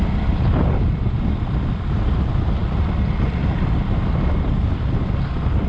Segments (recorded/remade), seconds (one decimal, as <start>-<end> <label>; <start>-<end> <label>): 0.0-5.7 recorded